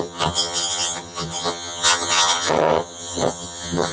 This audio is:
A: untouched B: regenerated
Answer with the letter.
B